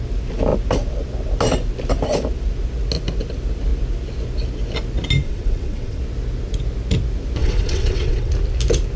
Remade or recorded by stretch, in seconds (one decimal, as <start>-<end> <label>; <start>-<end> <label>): 0.0-5.2 recorded; 5.2-6.0 remade; 6.0-7.4 recorded; 7.4-8.3 remade; 8.3-9.0 recorded